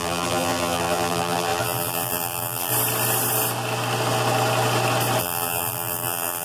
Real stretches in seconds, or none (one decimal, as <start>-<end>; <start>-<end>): 2.7-5.2